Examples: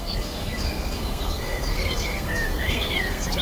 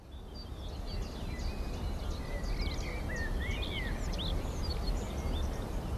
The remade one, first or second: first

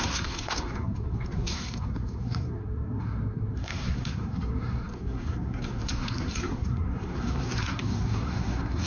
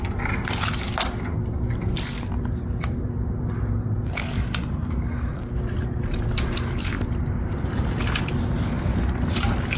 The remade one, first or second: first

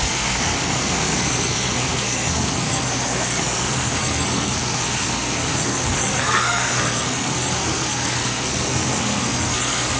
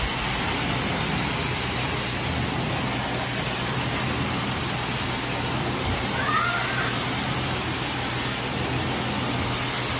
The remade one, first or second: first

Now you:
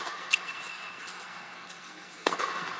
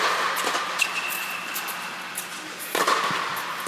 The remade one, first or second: first